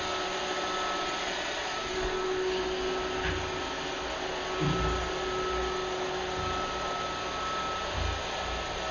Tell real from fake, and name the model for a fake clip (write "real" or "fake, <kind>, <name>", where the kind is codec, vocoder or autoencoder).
real